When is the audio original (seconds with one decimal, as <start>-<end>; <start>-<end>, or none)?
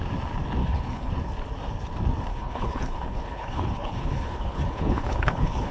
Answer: 0.0-0.6; 1.1-2.3